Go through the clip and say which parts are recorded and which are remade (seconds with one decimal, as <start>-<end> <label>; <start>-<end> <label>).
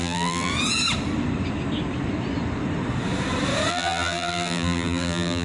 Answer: 0.0-0.5 remade; 0.5-3.7 recorded; 3.7-5.4 remade